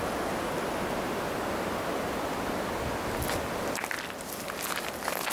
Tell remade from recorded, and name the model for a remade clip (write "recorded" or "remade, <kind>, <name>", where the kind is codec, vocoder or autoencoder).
recorded